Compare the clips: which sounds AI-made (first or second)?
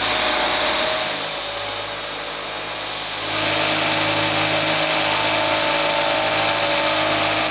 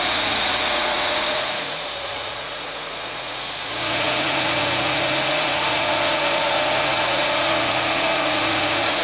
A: second